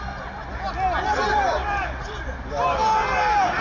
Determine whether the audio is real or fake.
real